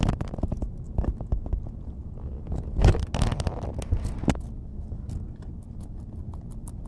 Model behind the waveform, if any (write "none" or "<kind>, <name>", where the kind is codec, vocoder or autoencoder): none